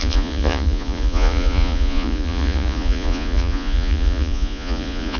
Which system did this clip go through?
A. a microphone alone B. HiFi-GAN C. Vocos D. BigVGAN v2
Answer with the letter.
C